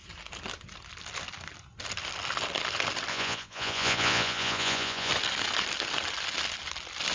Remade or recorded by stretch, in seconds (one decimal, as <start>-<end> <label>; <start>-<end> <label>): 0.0-3.1 recorded; 3.1-5.1 remade; 5.1-7.1 recorded